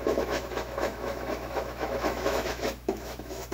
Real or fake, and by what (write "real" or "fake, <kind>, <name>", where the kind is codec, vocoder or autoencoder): fake, autoencoder, DAC-VAE